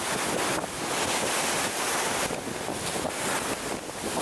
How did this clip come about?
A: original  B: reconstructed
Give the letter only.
A